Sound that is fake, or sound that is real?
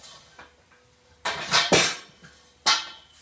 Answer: real